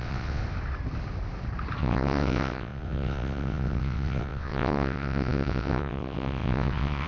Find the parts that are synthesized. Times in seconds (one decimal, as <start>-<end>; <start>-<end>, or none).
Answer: 0.0-0.4; 1.8-7.1